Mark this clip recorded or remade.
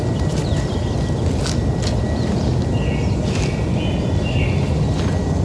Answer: recorded